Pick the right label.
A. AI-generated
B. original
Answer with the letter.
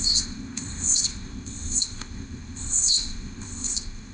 A